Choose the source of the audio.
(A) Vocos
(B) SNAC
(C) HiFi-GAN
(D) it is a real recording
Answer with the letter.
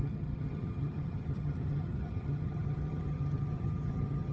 C